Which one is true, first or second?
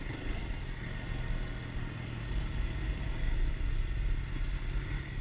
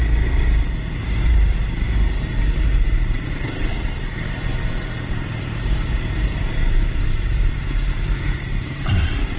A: first